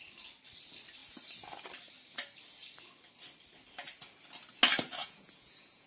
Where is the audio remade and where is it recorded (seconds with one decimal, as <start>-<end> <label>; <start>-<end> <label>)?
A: 0.0-5.0 recorded; 5.0-5.9 remade